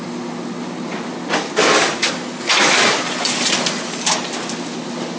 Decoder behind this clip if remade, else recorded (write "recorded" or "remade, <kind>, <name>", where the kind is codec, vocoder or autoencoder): recorded